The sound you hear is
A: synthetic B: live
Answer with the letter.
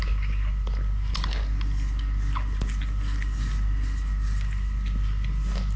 B